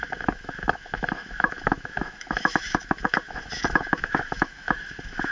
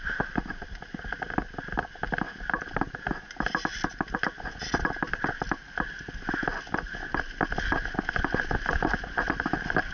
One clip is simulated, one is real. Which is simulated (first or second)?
first